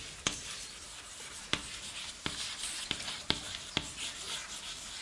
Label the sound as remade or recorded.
recorded